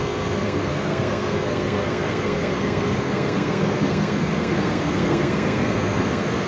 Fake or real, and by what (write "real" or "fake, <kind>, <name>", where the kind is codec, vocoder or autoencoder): fake, codec, SNAC